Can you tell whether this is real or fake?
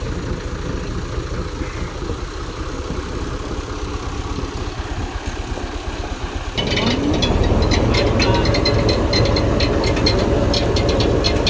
real